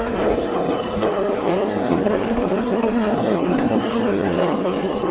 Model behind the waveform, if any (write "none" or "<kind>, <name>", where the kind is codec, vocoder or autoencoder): codec, SNAC